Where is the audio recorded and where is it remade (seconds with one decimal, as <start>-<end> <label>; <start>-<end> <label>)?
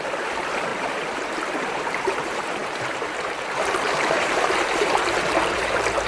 0.0-6.1 remade